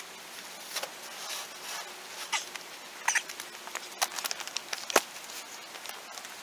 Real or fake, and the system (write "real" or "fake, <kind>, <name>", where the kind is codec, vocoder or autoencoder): real